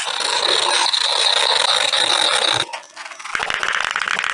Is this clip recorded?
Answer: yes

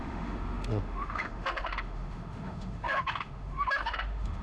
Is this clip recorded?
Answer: no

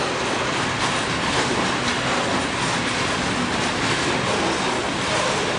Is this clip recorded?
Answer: yes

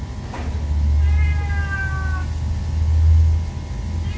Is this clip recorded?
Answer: yes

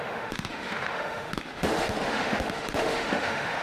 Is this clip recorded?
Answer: no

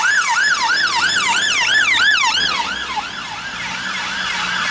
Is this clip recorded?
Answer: yes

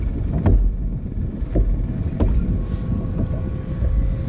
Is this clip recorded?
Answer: yes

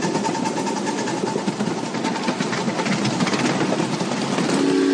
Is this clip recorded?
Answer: yes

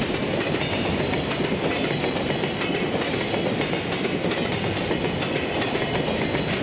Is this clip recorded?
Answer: yes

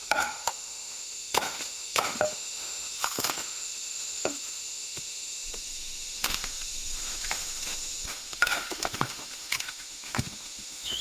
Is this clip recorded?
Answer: no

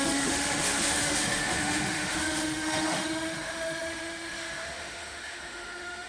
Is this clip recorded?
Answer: no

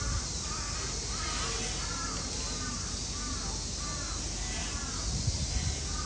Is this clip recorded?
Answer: yes